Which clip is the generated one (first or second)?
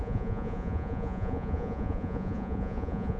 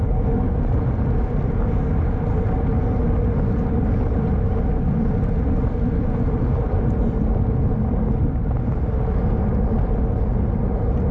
first